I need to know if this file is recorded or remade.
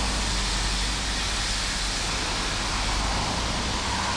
recorded